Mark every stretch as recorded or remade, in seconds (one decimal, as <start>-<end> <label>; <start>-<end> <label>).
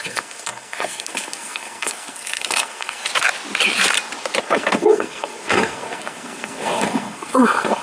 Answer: 0.0-3.1 remade; 3.1-4.4 recorded; 4.4-7.8 remade